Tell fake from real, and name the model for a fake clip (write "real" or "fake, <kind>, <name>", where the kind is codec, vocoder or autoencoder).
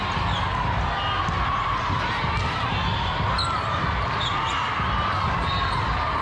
real